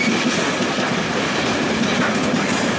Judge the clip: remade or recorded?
recorded